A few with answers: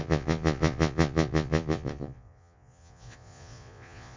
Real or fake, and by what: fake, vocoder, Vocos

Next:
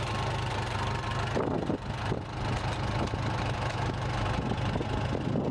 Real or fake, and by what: real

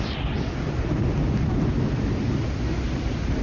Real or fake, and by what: real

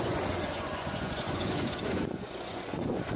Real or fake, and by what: fake, vocoder, Vocos